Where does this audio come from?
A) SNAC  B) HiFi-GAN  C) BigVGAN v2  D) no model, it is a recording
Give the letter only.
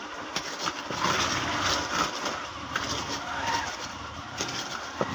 C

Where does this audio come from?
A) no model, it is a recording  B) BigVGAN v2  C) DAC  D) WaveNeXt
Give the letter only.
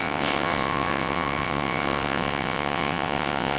D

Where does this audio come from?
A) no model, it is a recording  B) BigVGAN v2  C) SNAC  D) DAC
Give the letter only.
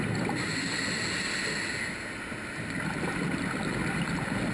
A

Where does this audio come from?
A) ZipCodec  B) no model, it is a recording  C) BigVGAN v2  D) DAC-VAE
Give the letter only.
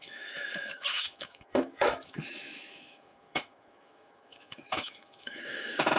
D